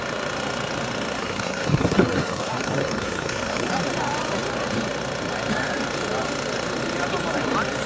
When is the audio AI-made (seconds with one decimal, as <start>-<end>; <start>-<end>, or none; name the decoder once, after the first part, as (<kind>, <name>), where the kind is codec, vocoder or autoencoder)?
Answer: 1.2-3.7 (codec, SNAC)